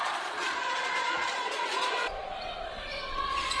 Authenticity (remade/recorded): remade